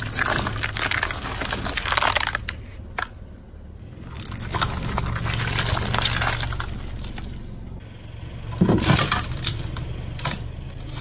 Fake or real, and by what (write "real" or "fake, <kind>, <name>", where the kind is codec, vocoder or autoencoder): real